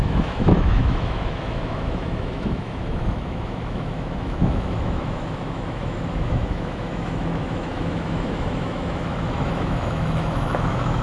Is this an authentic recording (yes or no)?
no